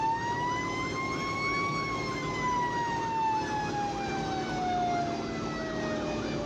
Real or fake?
real